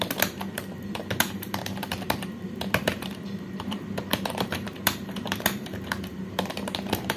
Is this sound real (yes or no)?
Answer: no